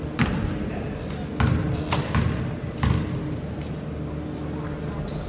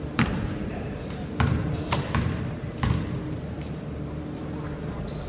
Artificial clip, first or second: second